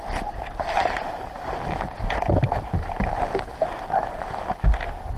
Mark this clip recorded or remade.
recorded